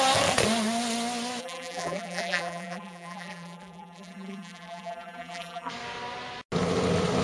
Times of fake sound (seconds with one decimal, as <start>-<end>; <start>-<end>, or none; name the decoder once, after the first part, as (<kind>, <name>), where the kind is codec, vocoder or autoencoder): 1.4-5.7 (vocoder, BigVGAN v2)